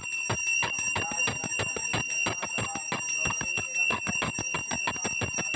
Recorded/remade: recorded